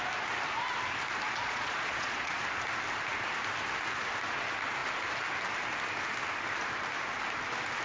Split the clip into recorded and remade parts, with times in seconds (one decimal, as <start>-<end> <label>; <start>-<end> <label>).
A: 0.0-1.4 recorded; 1.4-2.4 remade; 2.4-7.8 recorded